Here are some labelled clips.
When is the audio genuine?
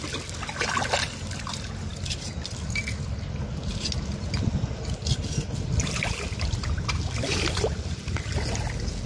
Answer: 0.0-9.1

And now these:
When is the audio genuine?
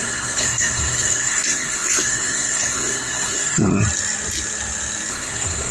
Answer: 3.7-5.1